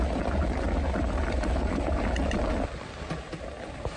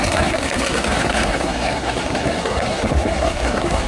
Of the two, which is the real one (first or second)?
first